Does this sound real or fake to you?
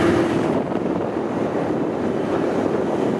real